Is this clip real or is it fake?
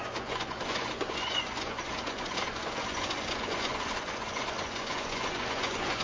fake